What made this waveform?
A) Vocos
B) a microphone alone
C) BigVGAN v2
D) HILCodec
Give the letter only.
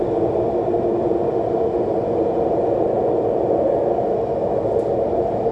B